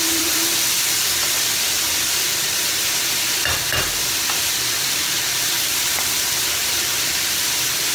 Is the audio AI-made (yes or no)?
yes